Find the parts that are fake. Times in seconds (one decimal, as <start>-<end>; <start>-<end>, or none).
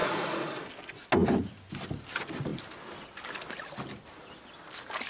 0.0-0.6